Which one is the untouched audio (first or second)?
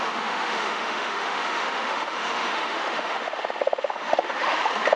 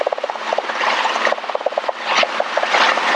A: second